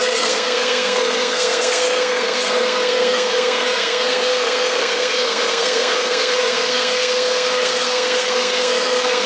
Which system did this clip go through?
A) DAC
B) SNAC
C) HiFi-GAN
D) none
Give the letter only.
B